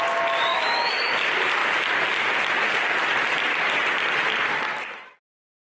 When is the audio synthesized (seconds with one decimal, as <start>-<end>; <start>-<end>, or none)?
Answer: 0.5-1.1